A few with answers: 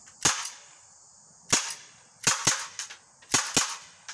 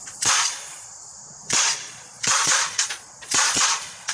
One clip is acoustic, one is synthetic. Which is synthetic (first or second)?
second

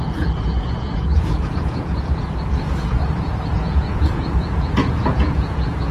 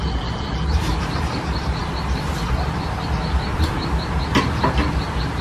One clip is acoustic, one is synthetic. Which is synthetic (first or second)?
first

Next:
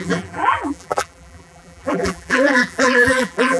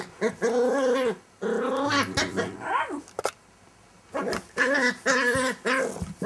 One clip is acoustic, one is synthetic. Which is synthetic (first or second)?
first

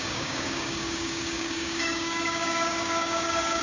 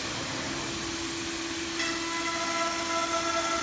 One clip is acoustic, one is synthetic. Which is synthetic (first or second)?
first